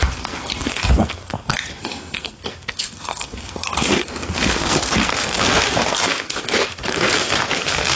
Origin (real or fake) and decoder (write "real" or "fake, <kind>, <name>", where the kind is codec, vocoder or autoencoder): fake, codec, SNAC